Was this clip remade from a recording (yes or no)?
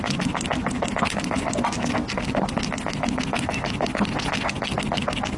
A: no